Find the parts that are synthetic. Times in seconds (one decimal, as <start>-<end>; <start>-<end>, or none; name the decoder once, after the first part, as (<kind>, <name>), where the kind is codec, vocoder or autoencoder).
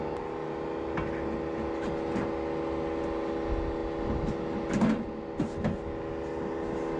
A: none